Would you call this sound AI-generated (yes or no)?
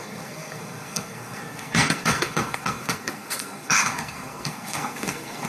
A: yes